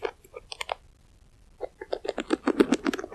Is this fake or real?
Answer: real